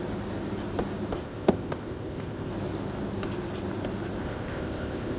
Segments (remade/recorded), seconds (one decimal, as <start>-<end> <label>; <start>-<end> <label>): 0.0-1.2 recorded; 1.2-2.5 remade; 2.5-4.2 recorded; 4.2-5.2 remade